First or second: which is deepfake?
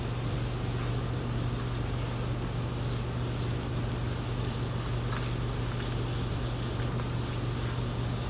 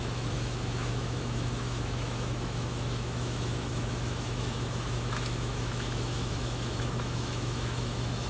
second